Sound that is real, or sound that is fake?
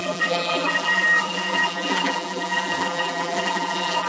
fake